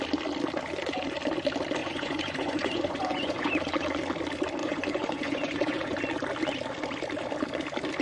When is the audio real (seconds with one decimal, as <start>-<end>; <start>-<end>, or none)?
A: 0.0-1.8; 3.5-4.6; 6.0-8.0